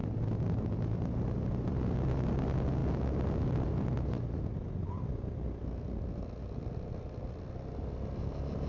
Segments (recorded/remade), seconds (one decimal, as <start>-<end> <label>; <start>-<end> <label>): 0.0-8.7 recorded